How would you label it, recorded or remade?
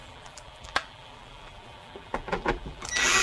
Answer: remade